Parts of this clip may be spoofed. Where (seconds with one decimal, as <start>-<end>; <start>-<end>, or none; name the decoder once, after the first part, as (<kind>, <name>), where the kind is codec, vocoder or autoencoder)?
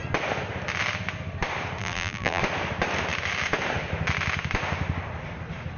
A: 1.8-2.4 (vocoder, BigVGAN v2)